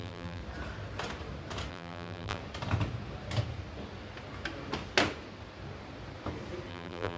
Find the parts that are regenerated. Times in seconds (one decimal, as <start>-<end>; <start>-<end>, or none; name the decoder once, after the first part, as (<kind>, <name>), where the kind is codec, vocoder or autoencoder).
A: 0.0-0.4 (vocoder, BigVGAN v2); 1.7-2.4; 6.7-7.2

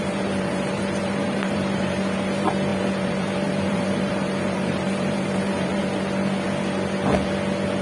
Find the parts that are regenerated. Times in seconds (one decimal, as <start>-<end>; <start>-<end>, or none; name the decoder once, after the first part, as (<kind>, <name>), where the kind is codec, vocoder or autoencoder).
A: 0.0-5.8 (vocoder, BigVGAN v2)

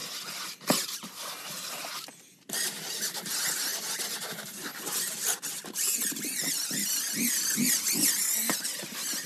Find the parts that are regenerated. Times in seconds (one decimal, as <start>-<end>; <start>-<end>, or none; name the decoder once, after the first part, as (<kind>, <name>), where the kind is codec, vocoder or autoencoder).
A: none

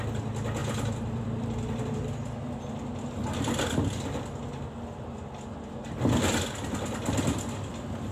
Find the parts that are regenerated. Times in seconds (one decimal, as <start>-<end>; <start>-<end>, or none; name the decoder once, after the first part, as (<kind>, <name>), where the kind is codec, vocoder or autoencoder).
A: 0.6-1.8 (vocoder, BigVGAN v2)

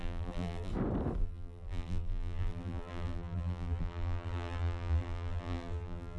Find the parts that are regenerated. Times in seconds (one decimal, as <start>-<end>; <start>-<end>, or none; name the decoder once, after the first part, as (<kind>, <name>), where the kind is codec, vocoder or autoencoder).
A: 0.0-0.7 (vocoder, BigVGAN v2); 1.2-6.2

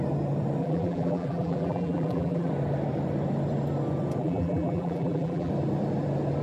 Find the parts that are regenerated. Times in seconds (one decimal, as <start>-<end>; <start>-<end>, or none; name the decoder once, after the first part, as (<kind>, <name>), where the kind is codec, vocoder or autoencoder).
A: 0.6-2.5 (vocoder, BigVGAN v2); 4.2-5.5

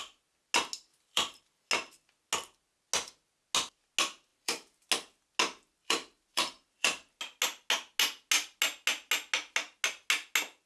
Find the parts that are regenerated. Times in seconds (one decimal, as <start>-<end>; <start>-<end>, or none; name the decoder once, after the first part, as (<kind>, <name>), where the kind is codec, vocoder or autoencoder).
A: 0.9-1.7 (vocoder, BigVGAN v2); 4.3-4.9; 5.8-7.2